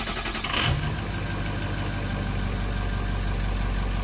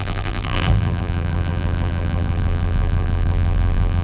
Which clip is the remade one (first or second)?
second